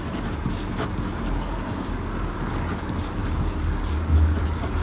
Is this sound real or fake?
fake